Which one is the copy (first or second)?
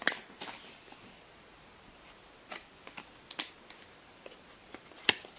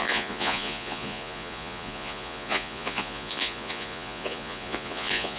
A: second